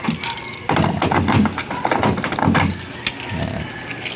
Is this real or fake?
real